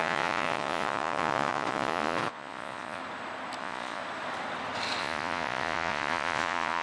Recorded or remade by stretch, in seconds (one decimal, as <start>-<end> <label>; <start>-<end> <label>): 0.0-3.0 remade; 3.0-3.6 recorded; 3.6-4.0 remade; 4.0-5.0 recorded; 5.0-6.8 remade